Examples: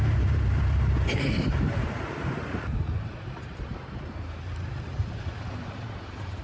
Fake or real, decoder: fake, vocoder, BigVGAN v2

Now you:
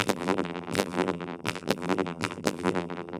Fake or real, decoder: fake, vocoder, BigVGAN v2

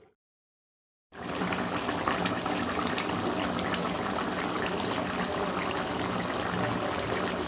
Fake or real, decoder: real